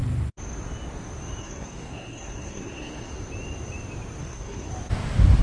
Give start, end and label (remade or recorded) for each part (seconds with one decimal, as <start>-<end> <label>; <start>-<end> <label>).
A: 0.0-1.4 recorded; 1.4-3.1 remade; 3.1-4.2 recorded; 4.2-4.7 remade; 4.7-5.4 recorded